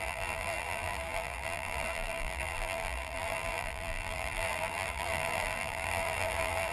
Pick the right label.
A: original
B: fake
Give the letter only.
B